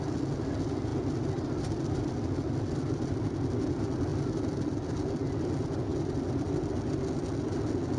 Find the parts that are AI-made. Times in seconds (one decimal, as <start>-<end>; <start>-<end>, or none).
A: none